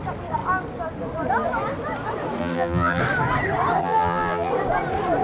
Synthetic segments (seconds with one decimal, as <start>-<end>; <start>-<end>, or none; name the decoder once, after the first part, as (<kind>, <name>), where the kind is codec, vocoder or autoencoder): 2.4-3.0 (vocoder, BigVGAN v2); 3.8-4.5